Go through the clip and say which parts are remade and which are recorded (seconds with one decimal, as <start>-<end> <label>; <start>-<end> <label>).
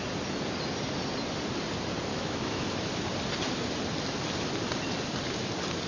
0.0-2.1 recorded; 2.1-2.9 remade; 2.9-5.9 recorded